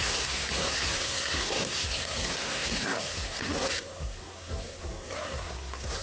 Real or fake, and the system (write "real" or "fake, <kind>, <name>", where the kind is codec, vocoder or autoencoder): fake, codec, SNAC